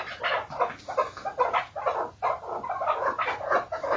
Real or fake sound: real